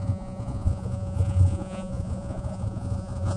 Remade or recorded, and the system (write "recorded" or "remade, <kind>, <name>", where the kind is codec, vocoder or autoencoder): remade, vocoder, Vocos